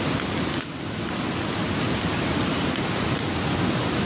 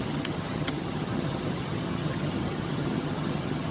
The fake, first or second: second